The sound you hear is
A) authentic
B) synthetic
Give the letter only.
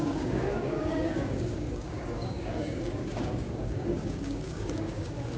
B